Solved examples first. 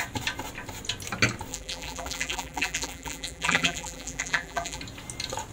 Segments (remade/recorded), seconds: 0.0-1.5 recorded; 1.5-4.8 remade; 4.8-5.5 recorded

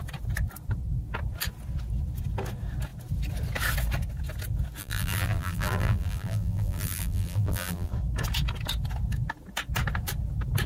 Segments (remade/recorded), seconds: 0.0-4.8 recorded; 4.8-7.9 remade; 7.9-10.7 recorded

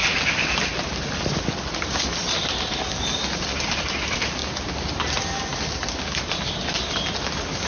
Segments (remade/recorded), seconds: 0.0-7.7 recorded

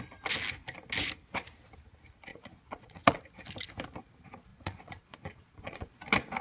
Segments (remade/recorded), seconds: 0.0-2.3 recorded; 2.3-3.2 remade; 3.2-4.5 recorded; 4.5-5.9 remade; 5.9-6.4 recorded